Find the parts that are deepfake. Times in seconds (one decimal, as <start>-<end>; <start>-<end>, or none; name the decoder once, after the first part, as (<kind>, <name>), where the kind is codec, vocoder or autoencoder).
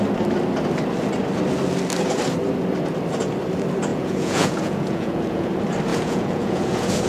3.9-5.5 (vocoder, Vocos); 5.9-7.1